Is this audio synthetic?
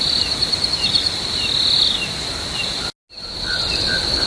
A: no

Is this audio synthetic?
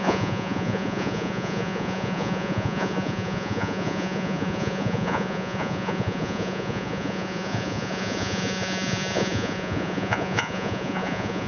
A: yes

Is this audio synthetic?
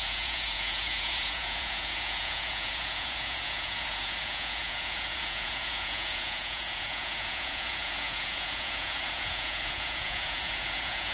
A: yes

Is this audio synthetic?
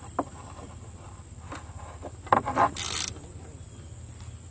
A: no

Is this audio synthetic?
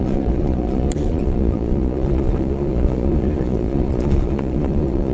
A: yes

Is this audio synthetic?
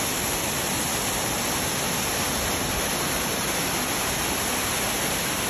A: no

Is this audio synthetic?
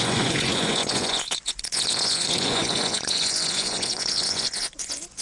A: yes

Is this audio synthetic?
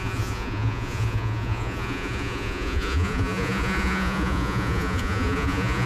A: yes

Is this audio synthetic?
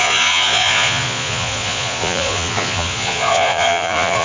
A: yes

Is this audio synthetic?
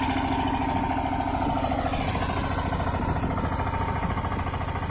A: no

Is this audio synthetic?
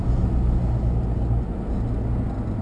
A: no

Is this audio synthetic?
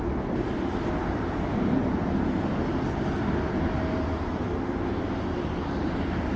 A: no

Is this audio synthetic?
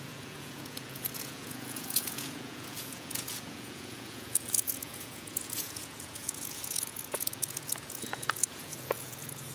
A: yes